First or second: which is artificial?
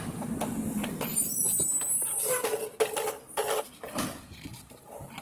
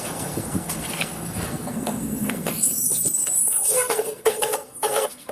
second